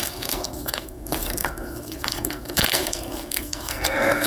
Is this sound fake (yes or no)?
yes